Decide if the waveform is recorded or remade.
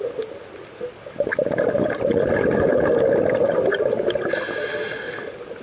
recorded